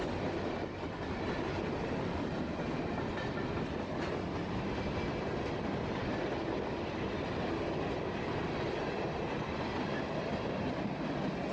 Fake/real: real